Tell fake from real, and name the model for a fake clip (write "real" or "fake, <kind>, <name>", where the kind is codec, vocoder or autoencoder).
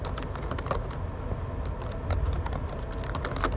real